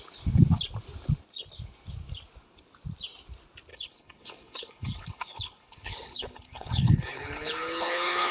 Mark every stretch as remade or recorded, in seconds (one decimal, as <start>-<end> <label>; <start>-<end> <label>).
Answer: 0.0-3.7 recorded; 3.7-8.3 remade

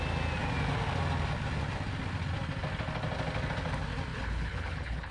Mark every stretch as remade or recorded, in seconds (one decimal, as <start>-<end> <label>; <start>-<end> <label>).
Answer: 0.0-4.1 recorded; 4.1-5.1 remade